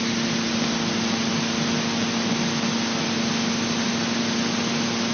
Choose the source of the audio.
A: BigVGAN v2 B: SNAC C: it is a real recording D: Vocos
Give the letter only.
C